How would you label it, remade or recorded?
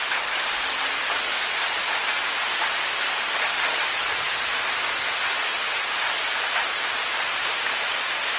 recorded